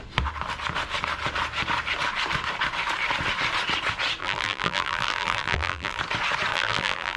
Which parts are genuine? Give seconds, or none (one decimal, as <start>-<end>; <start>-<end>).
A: 0.0-4.2; 6.0-6.5